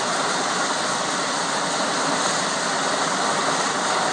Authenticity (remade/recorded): recorded